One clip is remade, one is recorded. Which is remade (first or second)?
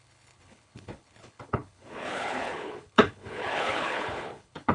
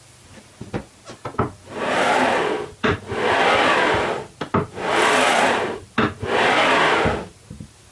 first